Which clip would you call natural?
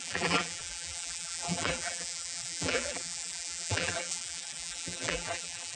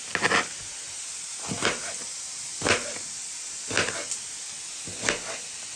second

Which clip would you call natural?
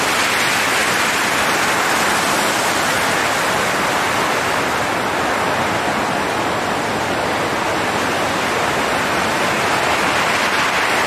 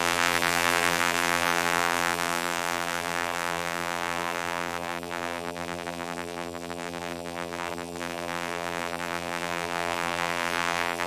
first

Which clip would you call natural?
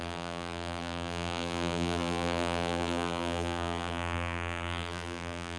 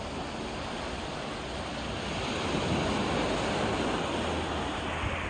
second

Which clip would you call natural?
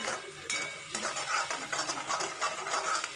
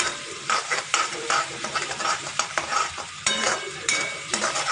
first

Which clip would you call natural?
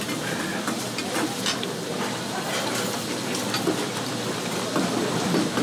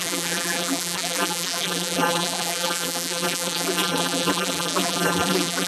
first